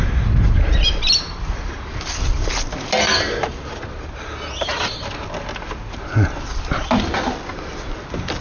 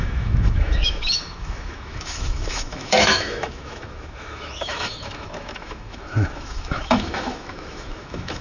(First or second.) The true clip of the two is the first